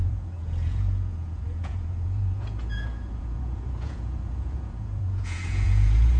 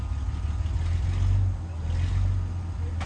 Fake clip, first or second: first